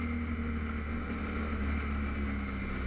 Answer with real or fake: real